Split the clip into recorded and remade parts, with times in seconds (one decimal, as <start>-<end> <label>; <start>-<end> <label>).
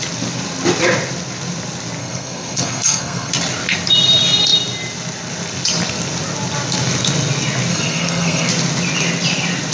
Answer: 0.0-2.0 recorded; 2.0-3.3 remade; 3.3-7.7 recorded; 7.7-8.5 remade; 8.5-9.7 recorded